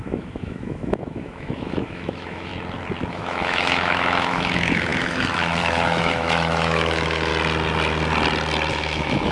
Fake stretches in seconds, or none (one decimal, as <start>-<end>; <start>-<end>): 0.0-2.5; 3.1-7.3; 8.7-9.3